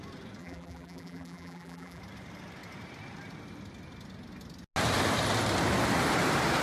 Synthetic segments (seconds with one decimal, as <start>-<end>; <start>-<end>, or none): 0.4-2.0